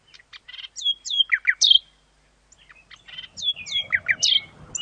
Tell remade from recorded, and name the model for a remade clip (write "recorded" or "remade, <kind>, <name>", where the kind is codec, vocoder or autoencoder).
recorded